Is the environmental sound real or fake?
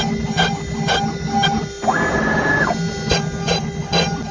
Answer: real